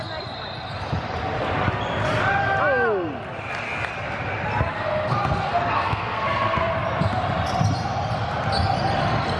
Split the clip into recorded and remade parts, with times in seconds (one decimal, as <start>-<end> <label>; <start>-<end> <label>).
0.0-4.7 recorded; 4.7-6.7 remade; 6.7-9.4 recorded